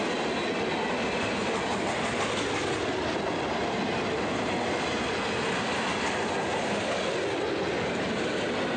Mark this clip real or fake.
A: real